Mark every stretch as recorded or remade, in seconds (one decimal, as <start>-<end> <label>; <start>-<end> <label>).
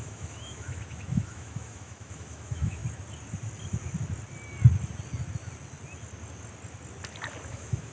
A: 0.0-2.8 remade; 2.8-7.5 recorded; 7.5-7.9 remade